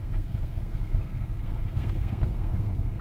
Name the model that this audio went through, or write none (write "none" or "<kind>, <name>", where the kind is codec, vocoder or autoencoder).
codec, SNAC